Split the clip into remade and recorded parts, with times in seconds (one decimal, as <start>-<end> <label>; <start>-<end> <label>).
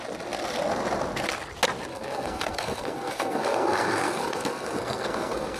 0.0-1.9 recorded; 1.9-5.6 remade